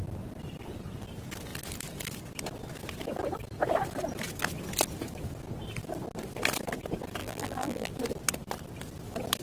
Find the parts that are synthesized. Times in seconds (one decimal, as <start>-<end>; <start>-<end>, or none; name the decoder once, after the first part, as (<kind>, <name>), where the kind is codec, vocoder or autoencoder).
7.2-7.9 (vocoder, BigVGAN v2)